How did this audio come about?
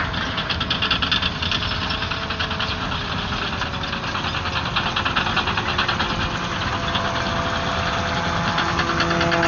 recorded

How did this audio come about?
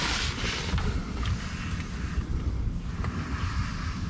recorded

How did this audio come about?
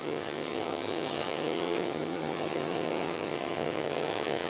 remade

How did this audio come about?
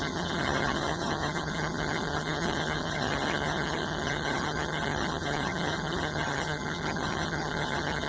remade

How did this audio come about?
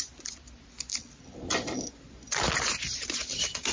recorded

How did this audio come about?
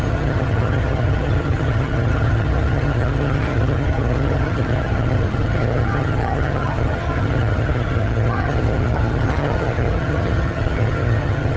remade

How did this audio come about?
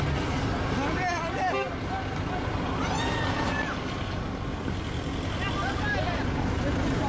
recorded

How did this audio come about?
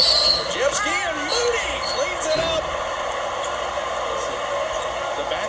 recorded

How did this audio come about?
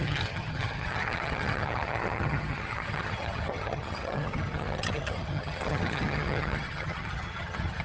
remade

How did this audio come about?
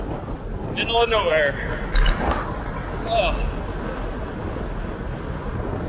recorded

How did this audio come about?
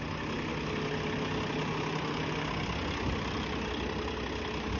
recorded